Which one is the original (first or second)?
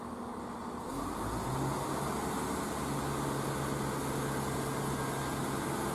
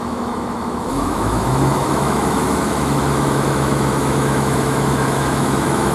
first